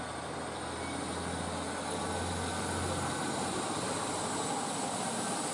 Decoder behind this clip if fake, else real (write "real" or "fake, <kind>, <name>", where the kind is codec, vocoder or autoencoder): real